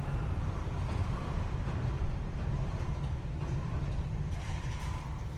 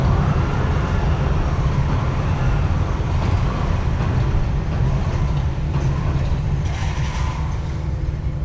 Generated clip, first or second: first